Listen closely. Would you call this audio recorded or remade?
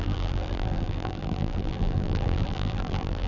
remade